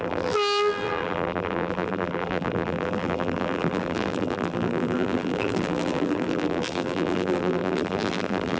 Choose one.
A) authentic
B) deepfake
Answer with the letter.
B